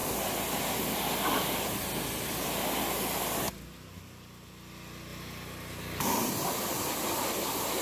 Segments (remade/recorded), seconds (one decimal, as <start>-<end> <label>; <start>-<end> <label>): 0.0-7.8 recorded